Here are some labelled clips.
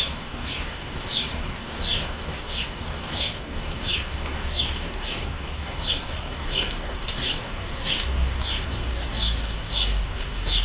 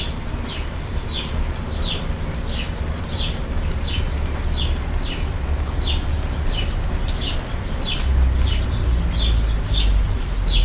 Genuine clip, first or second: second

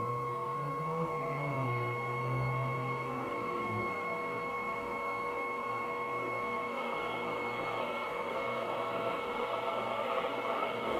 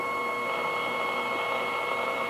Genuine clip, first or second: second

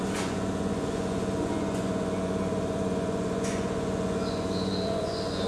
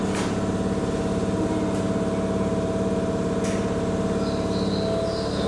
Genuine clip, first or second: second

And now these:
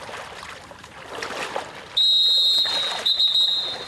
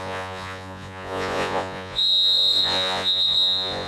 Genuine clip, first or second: first